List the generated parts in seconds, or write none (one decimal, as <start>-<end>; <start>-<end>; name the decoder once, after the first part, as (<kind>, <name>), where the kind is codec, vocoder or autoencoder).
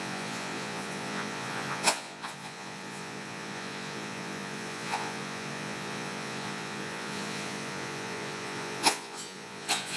0.0-10.0 (vocoder, Vocos)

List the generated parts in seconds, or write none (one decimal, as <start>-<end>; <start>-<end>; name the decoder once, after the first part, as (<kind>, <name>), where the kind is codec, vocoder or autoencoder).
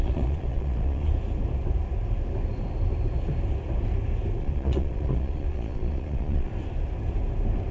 0.0-1.1 (vocoder, Vocos); 4.4-6.5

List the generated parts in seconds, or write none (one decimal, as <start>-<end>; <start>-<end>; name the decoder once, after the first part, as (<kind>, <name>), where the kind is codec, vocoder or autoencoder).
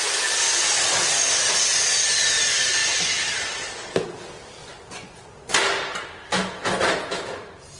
4.6-5.6 (vocoder, Vocos)